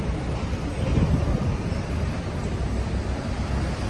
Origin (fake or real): real